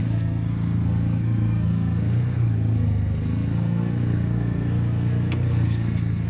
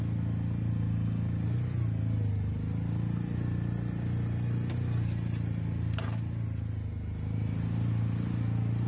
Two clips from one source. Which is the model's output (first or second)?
first